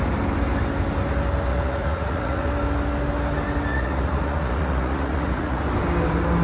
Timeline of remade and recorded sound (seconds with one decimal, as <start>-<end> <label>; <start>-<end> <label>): 0.0-1.5 recorded; 1.5-2.5 remade; 2.5-3.7 recorded; 3.7-5.6 remade; 5.6-6.4 recorded